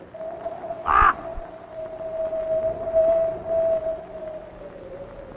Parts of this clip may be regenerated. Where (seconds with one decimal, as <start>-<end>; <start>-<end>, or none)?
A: none